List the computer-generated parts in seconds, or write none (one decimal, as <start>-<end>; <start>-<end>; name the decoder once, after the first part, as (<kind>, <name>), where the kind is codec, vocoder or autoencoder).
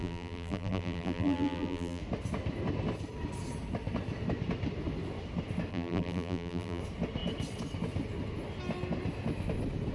0.0-2.0 (vocoder, BigVGAN v2); 5.7-6.8